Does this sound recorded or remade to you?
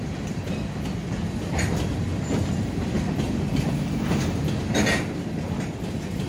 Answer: recorded